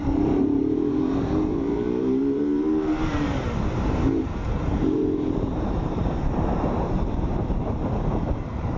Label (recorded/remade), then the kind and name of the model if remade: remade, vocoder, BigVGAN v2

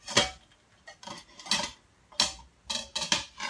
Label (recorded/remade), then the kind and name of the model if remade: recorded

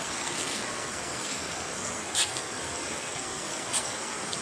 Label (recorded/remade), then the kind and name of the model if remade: remade, codec, SNAC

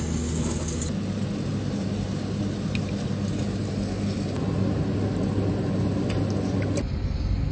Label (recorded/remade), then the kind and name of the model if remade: recorded